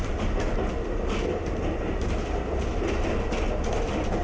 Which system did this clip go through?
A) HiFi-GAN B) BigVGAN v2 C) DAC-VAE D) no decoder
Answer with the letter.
D